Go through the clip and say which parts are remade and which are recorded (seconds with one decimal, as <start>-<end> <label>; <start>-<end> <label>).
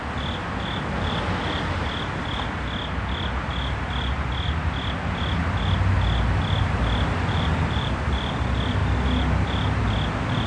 0.0-7.2 recorded; 7.2-8.4 remade; 8.4-10.5 recorded